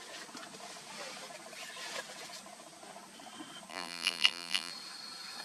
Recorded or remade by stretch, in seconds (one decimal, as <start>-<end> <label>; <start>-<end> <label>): 0.0-3.7 recorded; 3.7-4.7 remade; 4.7-5.4 recorded